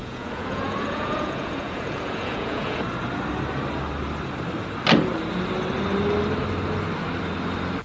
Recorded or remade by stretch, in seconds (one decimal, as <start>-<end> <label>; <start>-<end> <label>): 0.0-2.8 remade; 2.8-7.8 recorded